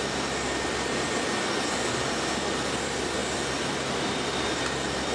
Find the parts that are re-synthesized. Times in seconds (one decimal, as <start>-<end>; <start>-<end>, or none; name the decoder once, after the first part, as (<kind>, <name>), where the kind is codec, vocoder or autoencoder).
0.0-5.1 (vocoder, BigVGAN v2)